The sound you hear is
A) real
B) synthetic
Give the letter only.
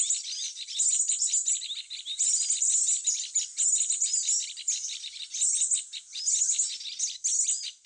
A